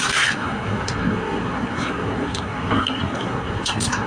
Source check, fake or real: fake